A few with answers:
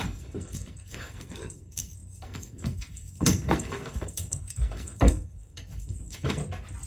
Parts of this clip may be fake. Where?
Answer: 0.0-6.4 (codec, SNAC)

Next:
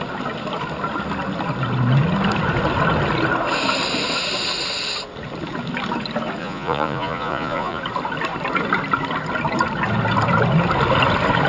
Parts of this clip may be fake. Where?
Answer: 6.4-7.8 (vocoder, Vocos)

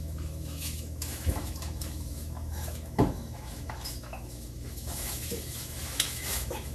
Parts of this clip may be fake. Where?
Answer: 0.0-6.7 (autoencoder, DAC-VAE)

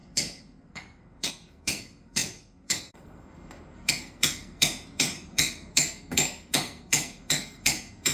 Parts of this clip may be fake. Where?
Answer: 0.0-8.1 (codec, SNAC)

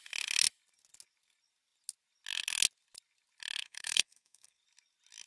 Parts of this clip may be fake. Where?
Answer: 3.6-4.6 (codec, SNAC)

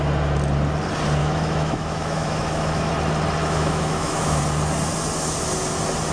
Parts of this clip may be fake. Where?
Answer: 1.2-2.9 (autoencoder, DAC-VAE); 3.4-4.4

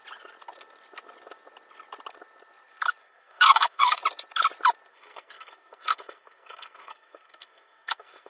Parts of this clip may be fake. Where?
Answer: 3.0-4.0 (codec, SNAC); 4.9-8.3

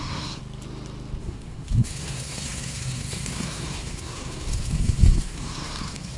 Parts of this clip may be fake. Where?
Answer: 0.0-0.4 (codec, SNAC); 1.2-6.2